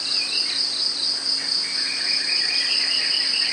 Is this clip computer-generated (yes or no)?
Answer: no